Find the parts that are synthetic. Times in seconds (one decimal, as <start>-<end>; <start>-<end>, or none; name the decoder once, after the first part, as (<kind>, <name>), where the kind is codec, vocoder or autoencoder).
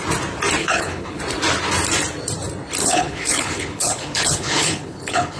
0.6-1.2 (codec, HILCodec); 2.8-5.4